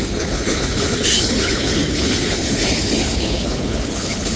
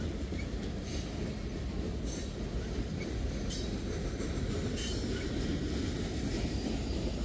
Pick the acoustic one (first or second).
second